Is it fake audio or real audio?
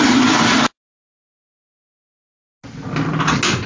real